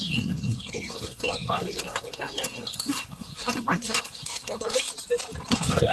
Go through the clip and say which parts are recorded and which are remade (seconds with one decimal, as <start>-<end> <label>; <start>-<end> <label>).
0.0-4.9 remade; 4.9-5.5 recorded; 5.5-5.9 remade